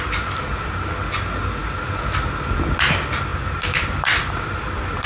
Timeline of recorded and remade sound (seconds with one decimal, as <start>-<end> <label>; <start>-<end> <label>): 0.0-1.6 recorded; 1.6-2.5 remade; 2.5-3.3 recorded; 3.3-4.3 remade; 4.3-5.1 recorded